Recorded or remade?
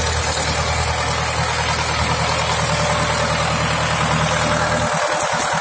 recorded